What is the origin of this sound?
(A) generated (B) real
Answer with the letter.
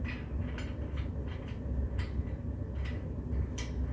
B